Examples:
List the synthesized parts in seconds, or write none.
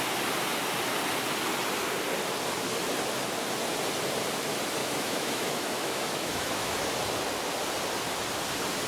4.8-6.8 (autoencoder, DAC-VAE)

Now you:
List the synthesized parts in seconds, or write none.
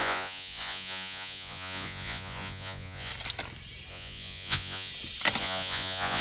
0.0-3.1 (vocoder, Vocos); 3.9-4.9; 5.4-6.2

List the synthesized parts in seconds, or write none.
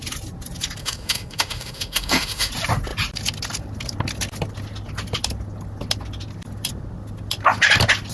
0.8-2.5 (autoencoder, DAC-VAE)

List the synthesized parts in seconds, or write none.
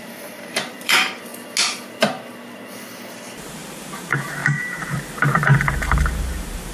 0.0-1.3 (vocoder, BigVGAN v2); 3.5-6.7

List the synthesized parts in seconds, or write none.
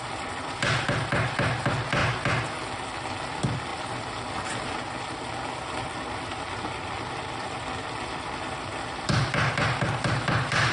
none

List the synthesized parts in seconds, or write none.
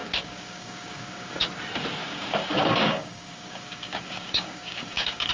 0.0-1.4 (codec, DAC); 2.0-5.3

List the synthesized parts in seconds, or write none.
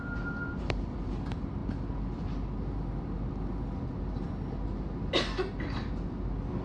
none